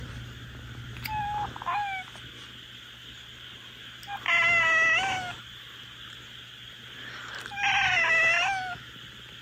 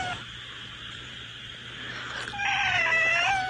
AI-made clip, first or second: second